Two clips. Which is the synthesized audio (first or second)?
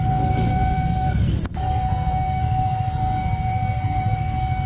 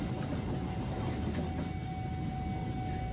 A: first